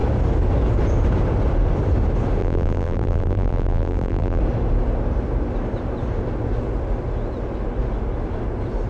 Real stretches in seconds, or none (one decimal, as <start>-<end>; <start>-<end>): 0.0-2.4; 4.4-8.9